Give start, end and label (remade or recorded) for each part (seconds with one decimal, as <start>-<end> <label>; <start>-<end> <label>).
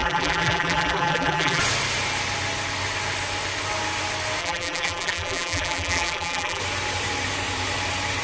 0.0-1.6 remade; 1.6-4.4 recorded; 4.4-6.6 remade; 6.6-8.2 recorded